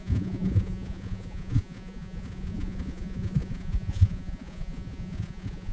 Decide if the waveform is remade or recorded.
remade